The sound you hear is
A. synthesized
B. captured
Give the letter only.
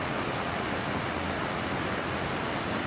B